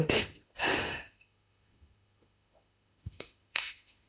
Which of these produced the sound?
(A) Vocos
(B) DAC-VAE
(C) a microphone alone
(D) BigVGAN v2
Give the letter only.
B